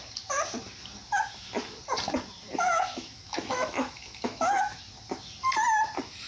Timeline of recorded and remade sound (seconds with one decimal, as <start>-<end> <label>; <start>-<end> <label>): 0.0-2.9 recorded; 2.9-4.8 remade; 4.8-6.3 recorded